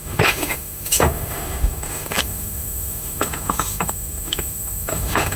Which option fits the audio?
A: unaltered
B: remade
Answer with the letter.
B